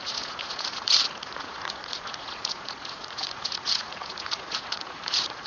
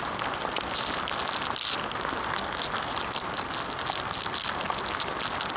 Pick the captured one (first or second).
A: second